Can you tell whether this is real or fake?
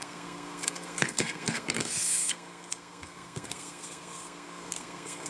fake